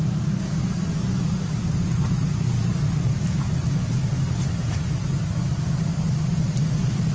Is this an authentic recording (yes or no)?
yes